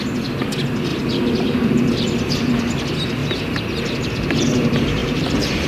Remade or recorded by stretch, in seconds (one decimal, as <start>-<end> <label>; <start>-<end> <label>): 0.0-5.0 recorded; 5.0-5.7 remade